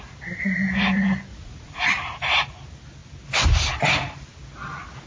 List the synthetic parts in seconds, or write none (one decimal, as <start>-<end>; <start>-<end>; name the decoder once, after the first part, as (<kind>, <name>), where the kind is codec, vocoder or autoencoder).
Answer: 1.3-1.9 (vocoder, Vocos)